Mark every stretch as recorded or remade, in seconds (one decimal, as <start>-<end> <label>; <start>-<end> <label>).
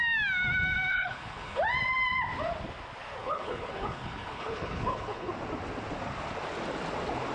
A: 0.0-0.9 recorded; 0.9-1.6 remade; 1.6-3.2 recorded; 3.2-5.3 remade; 5.3-7.3 recorded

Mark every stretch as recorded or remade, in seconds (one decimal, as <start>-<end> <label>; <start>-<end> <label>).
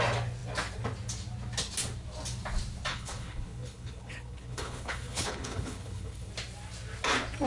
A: 0.0-2.9 recorded; 2.9-6.3 remade; 6.3-7.5 recorded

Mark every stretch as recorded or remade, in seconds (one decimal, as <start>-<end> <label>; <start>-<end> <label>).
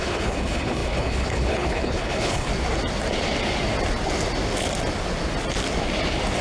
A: 0.0-2.5 remade; 2.5-6.4 recorded